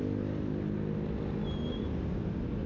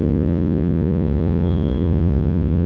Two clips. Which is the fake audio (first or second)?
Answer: second